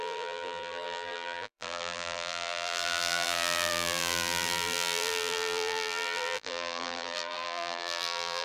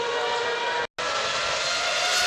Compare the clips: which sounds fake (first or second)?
first